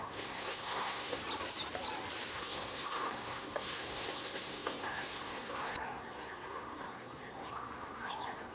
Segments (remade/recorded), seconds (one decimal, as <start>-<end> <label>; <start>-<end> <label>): 0.0-1.2 remade; 1.2-2.3 recorded; 2.3-8.5 remade